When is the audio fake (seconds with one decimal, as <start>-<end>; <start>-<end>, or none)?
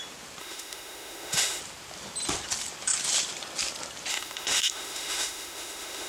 0.4-1.6; 4.1-6.1